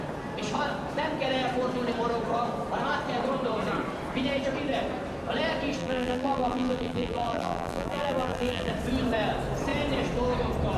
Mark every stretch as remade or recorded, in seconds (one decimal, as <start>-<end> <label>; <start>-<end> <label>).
0.0-5.8 recorded; 5.8-8.7 remade; 8.7-10.8 recorded